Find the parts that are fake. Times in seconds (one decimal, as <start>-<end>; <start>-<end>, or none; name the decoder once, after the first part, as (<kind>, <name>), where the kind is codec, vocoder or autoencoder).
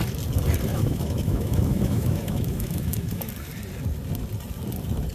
0.7-3.3 (autoencoder, DAC-VAE)